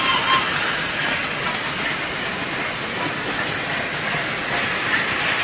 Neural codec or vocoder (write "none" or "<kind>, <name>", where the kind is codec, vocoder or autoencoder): none